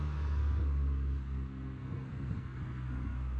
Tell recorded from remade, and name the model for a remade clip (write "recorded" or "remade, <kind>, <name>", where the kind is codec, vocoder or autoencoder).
remade, codec, SNAC